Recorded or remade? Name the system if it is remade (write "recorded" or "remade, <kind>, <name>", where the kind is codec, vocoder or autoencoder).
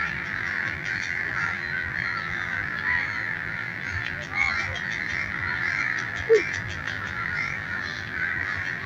remade, vocoder, BigVGAN v2